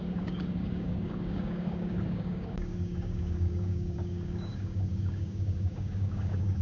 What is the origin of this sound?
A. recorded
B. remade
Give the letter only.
B